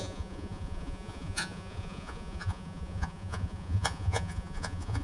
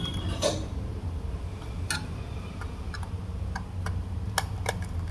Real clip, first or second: second